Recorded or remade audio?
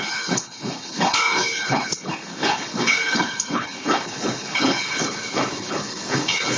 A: remade